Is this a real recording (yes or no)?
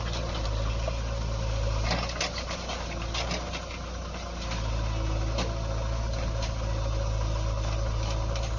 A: yes